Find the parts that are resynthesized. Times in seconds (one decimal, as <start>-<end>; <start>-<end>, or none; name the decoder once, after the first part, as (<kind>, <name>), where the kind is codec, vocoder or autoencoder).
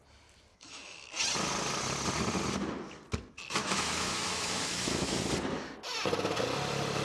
0.5-1.1 (autoencoder, DAC-VAE); 3.6-5.2